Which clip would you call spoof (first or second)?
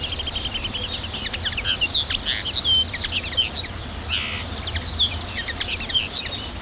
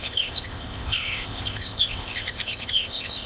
second